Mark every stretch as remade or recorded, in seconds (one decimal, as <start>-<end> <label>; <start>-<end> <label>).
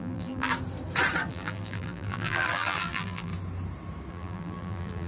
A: 0.0-0.5 remade; 0.5-1.3 recorded; 1.3-3.3 remade; 3.3-4.1 recorded; 4.1-5.1 remade